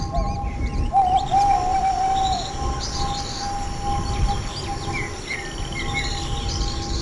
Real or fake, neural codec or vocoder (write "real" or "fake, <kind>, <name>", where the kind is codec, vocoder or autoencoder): real